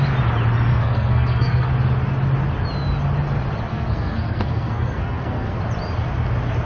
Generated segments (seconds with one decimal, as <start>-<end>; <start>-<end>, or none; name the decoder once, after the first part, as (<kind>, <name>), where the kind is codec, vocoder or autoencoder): 0.7-1.7 (codec, SNAC); 3.7-5.6